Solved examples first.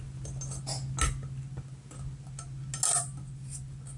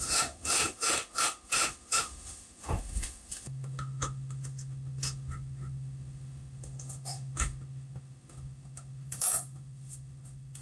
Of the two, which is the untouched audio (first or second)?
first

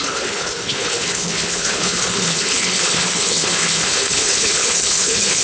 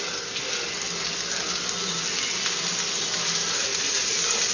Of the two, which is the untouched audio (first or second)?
second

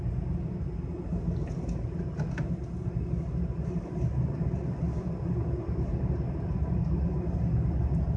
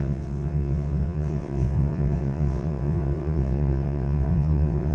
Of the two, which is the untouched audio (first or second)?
first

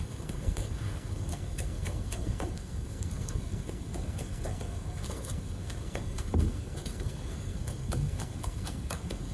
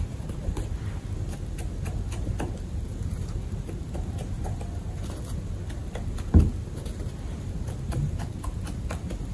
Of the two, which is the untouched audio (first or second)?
second